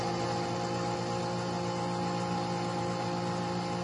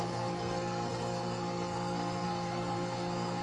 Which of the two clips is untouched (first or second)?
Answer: first